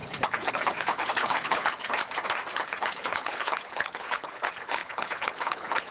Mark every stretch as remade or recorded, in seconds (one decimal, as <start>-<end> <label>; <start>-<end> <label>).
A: 0.0-2.0 remade; 2.0-2.5 recorded; 2.5-5.9 remade